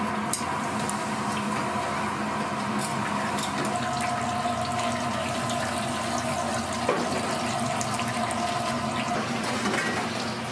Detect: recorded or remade recorded